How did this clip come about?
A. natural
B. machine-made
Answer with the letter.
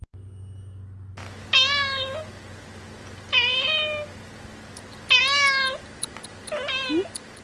A